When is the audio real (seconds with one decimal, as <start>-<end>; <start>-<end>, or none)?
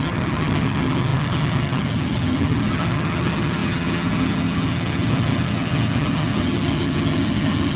none